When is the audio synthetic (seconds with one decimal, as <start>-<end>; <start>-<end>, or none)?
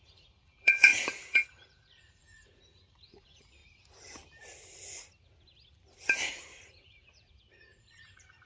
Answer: 0.0-3.6; 6.3-8.5